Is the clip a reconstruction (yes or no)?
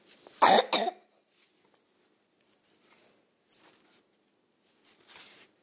no